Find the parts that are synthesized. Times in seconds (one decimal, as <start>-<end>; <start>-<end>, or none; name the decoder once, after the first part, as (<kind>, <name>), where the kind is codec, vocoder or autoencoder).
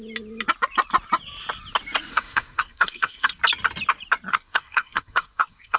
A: 2.1-3.4 (codec, SNAC); 4.3-5.8